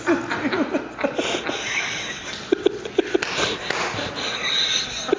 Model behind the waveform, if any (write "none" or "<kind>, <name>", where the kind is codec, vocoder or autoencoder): none